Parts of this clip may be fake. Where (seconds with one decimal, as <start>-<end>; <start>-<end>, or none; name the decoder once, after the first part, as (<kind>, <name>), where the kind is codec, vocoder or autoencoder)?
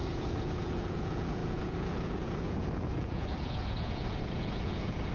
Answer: 0.0-5.1 (vocoder, Vocos)